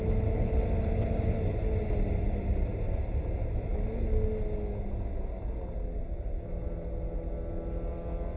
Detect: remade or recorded recorded